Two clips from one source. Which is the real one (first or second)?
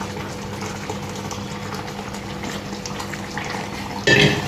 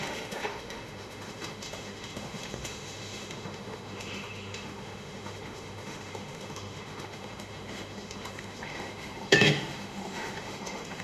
first